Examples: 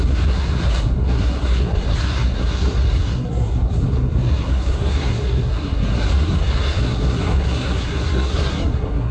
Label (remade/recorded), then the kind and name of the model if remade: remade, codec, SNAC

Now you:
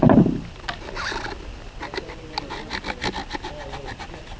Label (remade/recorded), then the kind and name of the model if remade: recorded